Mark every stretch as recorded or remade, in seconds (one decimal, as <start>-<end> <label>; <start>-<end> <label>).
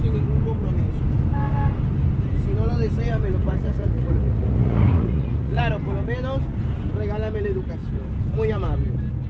0.0-3.4 recorded; 3.4-5.6 remade; 5.6-9.3 recorded